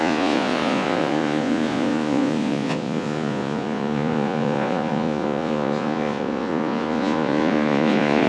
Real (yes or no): no